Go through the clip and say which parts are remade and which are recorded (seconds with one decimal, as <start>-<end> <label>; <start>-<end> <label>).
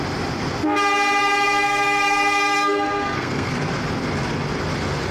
0.0-1.2 recorded; 1.2-3.5 remade; 3.5-5.1 recorded